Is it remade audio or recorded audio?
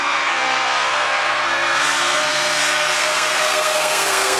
remade